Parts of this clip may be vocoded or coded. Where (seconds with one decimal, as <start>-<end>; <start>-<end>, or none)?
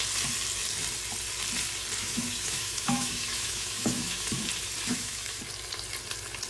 2.0-4.5; 4.9-5.4